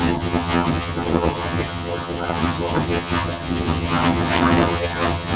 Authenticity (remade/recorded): remade